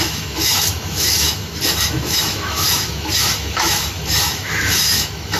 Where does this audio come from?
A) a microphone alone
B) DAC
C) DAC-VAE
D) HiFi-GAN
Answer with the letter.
C